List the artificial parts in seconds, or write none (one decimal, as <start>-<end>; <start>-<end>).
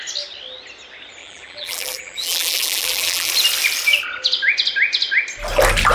1.2-3.3